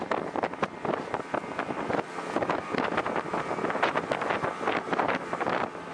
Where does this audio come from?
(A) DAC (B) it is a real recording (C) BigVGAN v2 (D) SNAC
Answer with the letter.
B